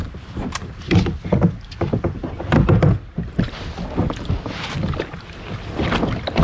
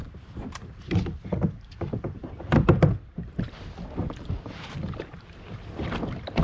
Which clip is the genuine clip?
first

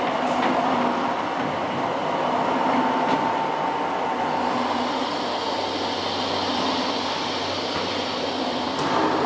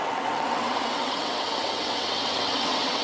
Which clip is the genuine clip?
first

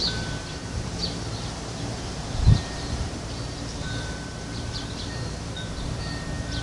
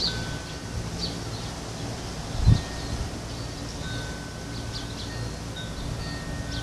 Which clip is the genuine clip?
second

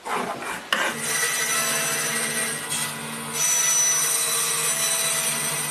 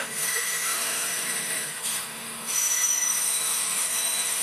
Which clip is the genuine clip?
first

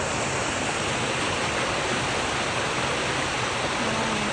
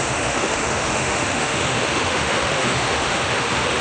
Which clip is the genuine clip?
first